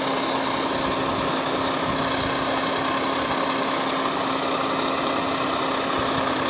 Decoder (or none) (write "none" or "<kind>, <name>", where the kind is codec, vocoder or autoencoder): none